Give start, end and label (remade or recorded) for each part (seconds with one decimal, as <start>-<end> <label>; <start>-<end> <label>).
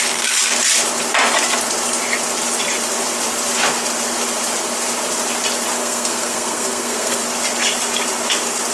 0.0-5.8 recorded; 5.8-7.2 remade; 7.2-8.7 recorded